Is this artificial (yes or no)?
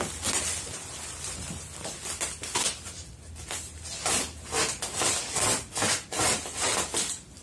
no